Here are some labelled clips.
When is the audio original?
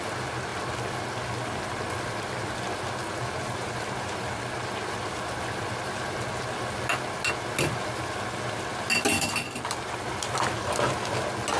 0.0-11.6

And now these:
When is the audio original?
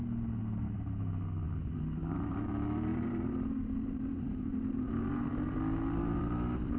0.0-0.4; 1.1-2.9; 5.6-6.8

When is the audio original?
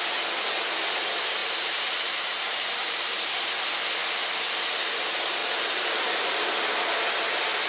0.0-1.4; 3.5-5.4; 6.5-7.7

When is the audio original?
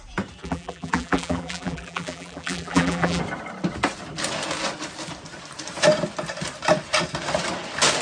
0.0-0.4; 3.2-8.0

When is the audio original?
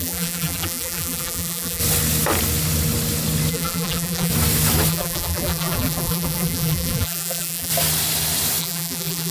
1.8-3.5; 4.3-4.9; 7.7-8.6